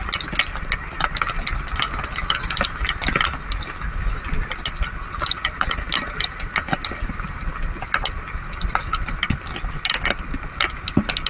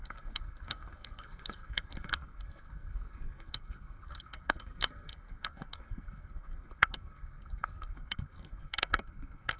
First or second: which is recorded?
first